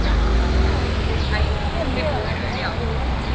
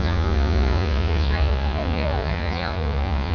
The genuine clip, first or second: first